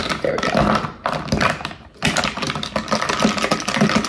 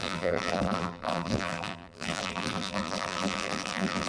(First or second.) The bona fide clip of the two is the first